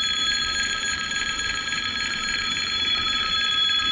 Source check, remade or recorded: remade